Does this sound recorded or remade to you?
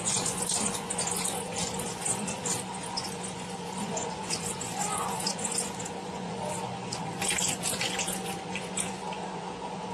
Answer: remade